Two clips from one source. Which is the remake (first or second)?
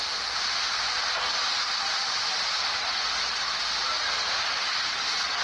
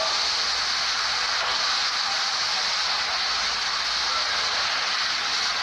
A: first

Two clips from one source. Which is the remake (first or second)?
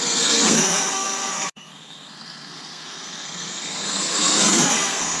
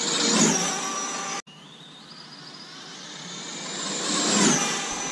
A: first